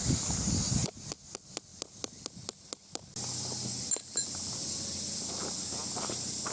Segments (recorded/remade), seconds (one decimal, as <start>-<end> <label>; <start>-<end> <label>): 0.0-6.5 recorded